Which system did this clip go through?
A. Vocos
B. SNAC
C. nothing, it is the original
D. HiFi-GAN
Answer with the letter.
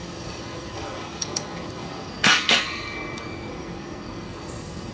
B